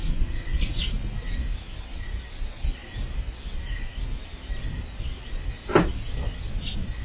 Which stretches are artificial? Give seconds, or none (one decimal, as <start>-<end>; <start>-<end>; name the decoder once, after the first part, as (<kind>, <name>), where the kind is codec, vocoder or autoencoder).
0.0-0.8 (vocoder, Vocos)